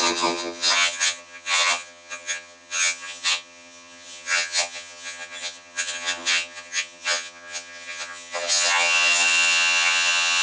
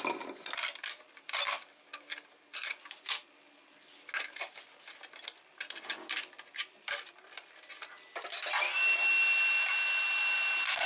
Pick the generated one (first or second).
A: first